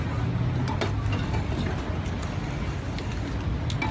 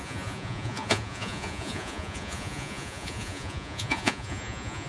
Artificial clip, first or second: second